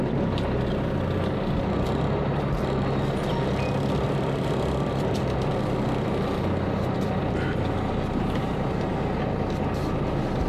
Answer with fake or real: real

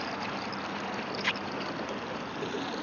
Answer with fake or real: fake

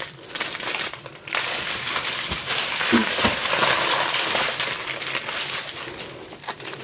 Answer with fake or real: fake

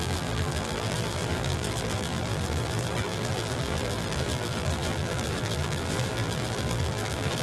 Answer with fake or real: fake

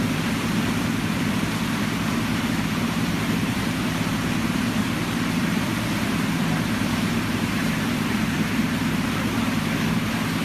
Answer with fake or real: fake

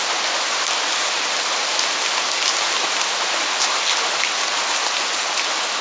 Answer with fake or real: real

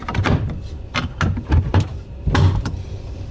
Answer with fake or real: fake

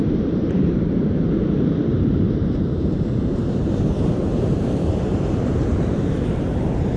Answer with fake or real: fake